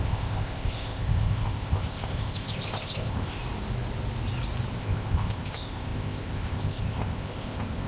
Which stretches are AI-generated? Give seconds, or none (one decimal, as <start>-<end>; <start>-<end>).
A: 0.0-3.4; 4.8-7.9